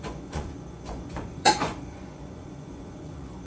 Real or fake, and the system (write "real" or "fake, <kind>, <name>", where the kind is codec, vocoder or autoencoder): fake, vocoder, Vocos